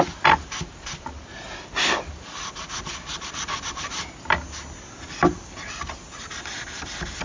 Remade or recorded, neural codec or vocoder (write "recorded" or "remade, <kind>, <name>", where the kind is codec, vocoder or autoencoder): recorded